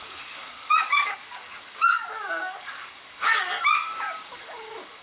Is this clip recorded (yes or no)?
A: no